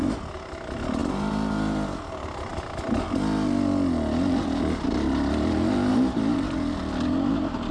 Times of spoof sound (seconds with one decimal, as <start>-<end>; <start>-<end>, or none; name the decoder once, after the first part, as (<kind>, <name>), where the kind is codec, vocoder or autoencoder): none